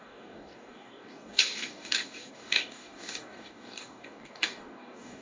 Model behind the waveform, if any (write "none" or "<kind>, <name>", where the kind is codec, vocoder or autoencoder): codec, DAC